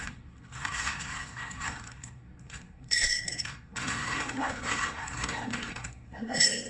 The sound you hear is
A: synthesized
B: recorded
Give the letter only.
A